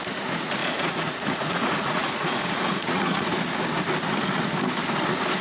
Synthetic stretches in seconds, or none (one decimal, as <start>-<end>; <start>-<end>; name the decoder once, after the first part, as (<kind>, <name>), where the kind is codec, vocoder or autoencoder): 0.6-3.4 (vocoder, Vocos)